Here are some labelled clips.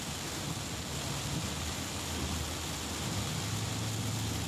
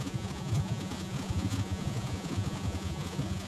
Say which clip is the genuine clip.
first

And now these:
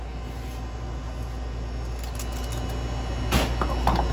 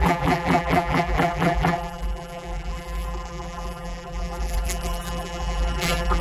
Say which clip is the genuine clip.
first